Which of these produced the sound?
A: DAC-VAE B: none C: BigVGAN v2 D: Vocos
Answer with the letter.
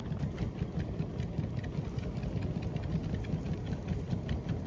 B